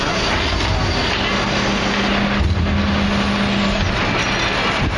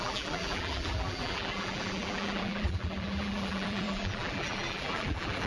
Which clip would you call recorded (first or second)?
first